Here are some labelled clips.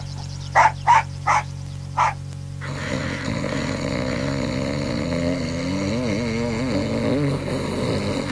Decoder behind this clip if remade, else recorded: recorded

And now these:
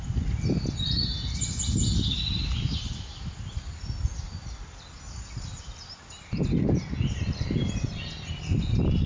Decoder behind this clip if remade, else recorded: recorded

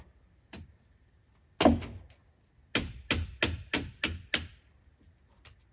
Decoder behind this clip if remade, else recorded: recorded